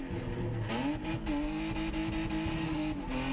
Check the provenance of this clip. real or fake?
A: real